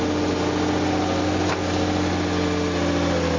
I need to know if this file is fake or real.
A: real